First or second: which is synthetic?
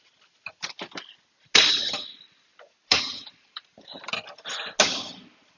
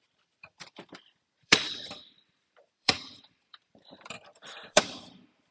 second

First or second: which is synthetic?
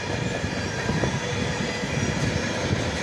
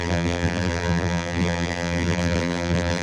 second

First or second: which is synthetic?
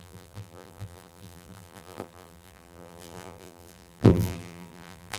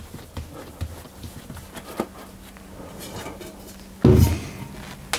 first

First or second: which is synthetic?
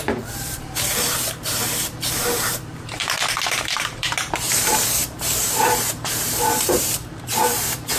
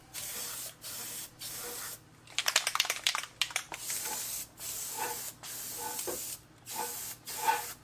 first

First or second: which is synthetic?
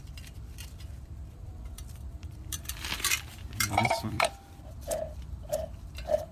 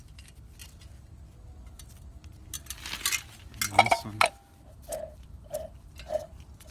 first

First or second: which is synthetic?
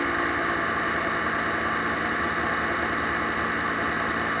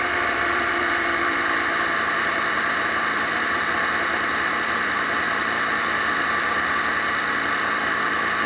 second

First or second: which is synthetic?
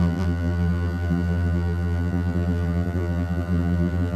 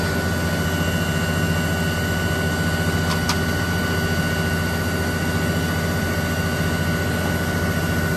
first